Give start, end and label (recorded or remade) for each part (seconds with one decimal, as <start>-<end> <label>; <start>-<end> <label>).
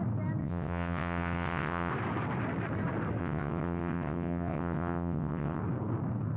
0.0-0.4 recorded; 0.4-1.9 remade; 1.9-3.2 recorded; 3.2-5.6 remade; 5.6-6.4 recorded